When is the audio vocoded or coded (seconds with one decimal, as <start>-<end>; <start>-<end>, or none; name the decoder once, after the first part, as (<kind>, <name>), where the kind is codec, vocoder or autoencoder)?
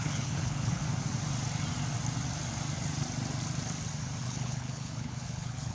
0.0-0.8 (codec, HILCodec); 4.2-5.7